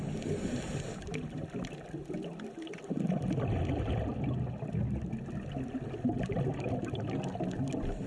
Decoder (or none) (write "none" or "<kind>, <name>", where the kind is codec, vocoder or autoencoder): none